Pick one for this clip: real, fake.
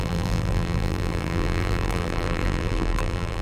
fake